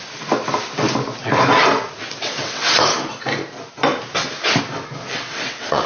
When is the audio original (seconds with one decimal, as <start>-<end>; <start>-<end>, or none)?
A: 0.0-2.2; 2.7-5.1